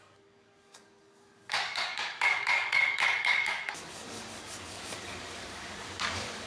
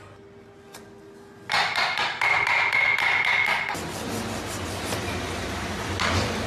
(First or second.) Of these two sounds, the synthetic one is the first